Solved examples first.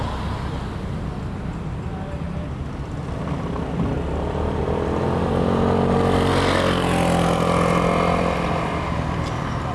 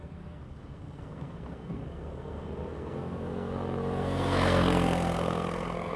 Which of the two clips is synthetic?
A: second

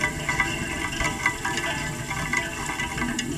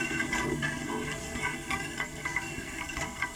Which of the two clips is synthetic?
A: second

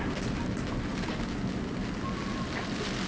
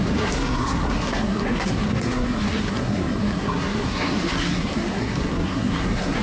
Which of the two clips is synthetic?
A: second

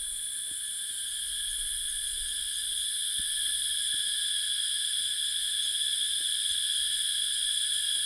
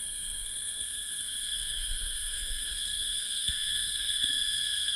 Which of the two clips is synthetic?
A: second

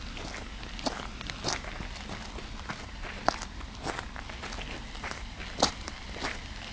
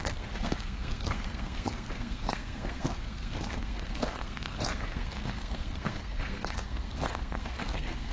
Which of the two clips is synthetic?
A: second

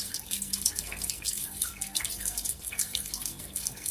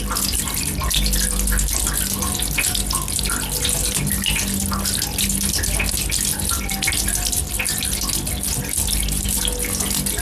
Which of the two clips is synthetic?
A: first